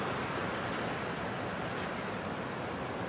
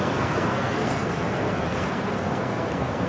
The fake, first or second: second